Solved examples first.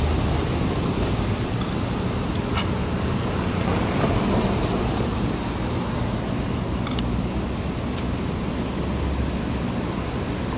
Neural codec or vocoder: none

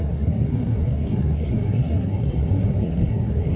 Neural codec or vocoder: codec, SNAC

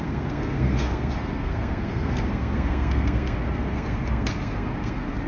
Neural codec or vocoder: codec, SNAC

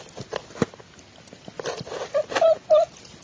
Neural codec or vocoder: none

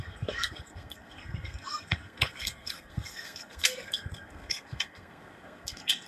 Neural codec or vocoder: codec, SNAC